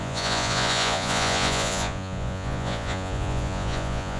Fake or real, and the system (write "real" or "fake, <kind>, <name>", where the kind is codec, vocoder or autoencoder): fake, vocoder, Vocos